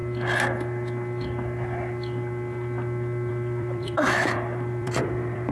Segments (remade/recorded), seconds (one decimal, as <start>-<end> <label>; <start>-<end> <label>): 0.0-3.3 recorded; 3.3-5.5 remade